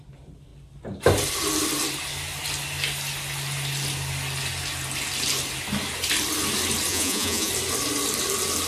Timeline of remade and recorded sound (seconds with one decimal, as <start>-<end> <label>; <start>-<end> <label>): 0.0-6.9 recorded; 6.9-7.5 remade; 7.5-8.7 recorded